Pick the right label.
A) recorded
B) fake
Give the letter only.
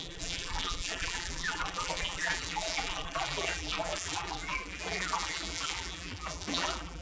B